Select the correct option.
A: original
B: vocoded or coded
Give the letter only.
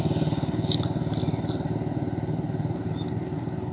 A